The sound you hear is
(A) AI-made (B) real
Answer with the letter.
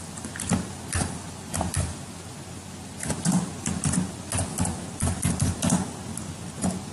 B